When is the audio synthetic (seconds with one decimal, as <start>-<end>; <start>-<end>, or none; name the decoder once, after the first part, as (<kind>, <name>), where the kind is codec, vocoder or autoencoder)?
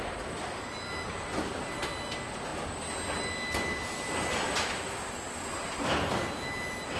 none